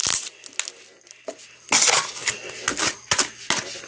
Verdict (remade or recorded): recorded